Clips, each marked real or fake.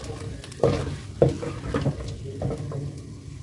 real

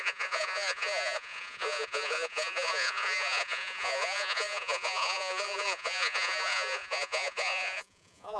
fake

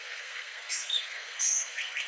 fake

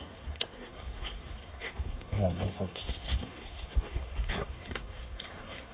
fake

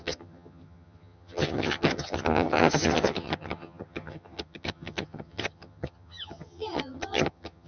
fake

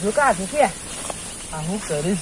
real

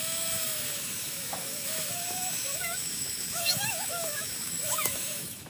fake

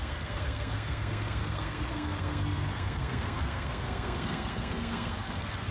fake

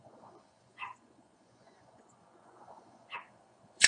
fake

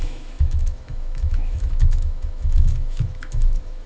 fake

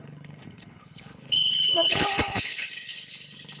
fake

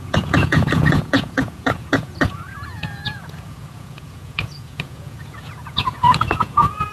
fake